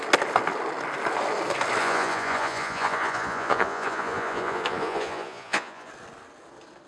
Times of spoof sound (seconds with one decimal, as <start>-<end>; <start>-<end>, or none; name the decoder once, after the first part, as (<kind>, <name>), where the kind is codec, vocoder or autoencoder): 1.8-5.9 (vocoder, Vocos)